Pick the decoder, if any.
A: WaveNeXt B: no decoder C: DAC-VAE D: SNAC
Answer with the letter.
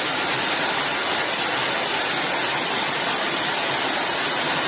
B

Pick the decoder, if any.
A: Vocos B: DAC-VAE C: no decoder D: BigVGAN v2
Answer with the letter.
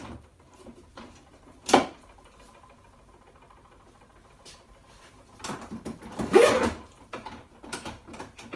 D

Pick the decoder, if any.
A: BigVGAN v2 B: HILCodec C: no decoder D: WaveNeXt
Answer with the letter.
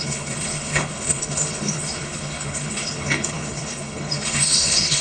B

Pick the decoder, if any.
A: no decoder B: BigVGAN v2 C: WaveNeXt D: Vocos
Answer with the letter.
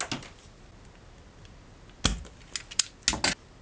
A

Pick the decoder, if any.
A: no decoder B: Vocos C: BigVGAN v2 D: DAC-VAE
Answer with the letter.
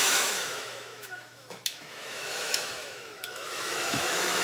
D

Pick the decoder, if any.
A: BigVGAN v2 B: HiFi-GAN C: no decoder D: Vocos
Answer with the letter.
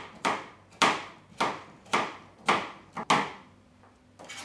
C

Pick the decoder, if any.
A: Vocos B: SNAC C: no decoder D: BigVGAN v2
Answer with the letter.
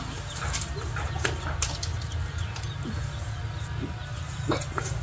C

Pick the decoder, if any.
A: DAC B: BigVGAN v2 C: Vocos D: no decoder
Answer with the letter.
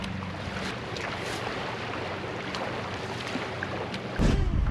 D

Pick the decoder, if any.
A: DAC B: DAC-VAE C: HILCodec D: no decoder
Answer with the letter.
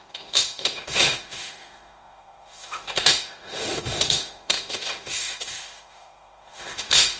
B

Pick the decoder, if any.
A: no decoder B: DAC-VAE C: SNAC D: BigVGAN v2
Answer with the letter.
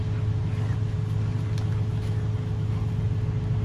A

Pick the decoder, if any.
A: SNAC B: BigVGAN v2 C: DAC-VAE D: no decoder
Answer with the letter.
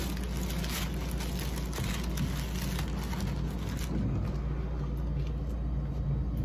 D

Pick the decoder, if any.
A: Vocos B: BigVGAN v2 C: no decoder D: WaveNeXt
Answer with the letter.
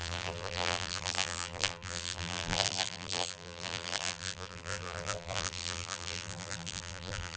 B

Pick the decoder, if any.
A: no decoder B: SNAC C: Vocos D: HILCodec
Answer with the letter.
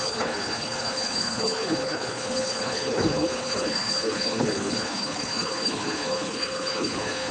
D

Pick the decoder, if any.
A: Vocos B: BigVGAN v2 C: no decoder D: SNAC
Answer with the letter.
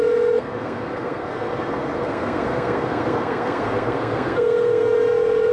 D